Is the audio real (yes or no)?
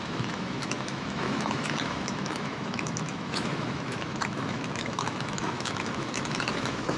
no